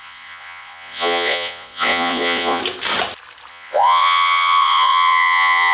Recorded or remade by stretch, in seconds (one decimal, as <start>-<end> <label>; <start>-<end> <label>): 0.0-2.6 remade; 2.6-3.5 recorded; 3.5-5.7 remade